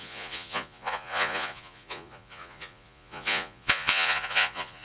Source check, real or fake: fake